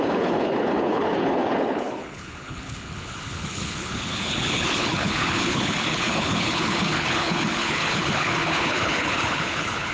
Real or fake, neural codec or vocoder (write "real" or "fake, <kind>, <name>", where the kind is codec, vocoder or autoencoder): fake, codec, HILCodec